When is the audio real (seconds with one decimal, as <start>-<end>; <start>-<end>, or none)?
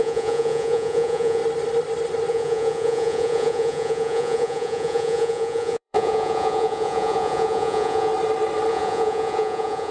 1.4-2.3; 8.1-8.7